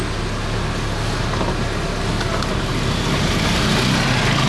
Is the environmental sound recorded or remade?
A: recorded